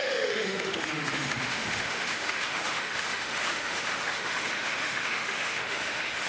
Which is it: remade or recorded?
remade